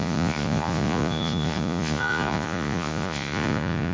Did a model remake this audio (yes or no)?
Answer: yes